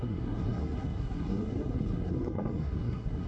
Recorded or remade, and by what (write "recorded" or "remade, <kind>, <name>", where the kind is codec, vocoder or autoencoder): remade, codec, SNAC